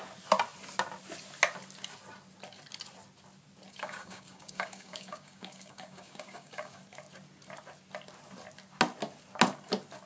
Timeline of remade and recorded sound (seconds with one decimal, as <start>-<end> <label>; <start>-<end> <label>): 0.0-3.7 recorded; 3.7-6.8 remade; 6.8-10.1 recorded